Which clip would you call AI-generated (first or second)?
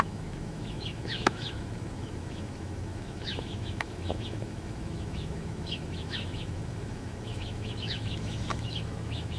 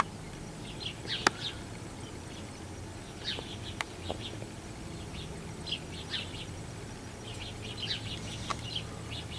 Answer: first